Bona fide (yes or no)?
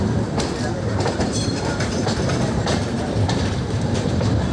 no